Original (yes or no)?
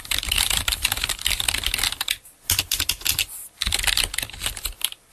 yes